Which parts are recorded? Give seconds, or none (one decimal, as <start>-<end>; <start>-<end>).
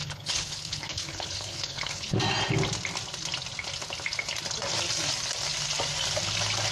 2.2-6.7